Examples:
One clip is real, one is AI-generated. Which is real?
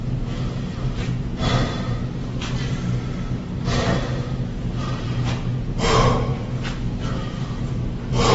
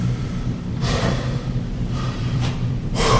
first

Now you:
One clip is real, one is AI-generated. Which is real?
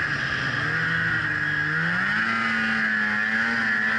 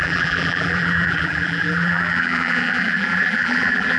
first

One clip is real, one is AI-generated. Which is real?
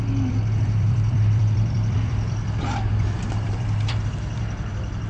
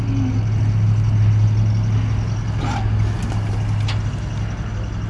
second